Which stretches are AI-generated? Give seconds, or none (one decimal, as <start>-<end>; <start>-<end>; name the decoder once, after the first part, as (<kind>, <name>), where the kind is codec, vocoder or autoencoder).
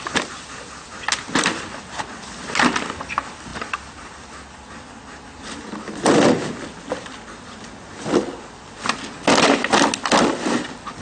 none